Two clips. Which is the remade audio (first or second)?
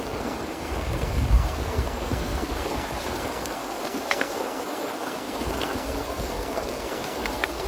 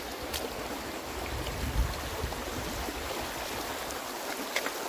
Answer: first